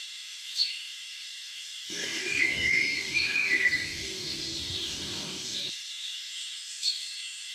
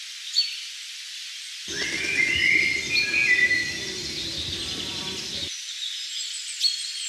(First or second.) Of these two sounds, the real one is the second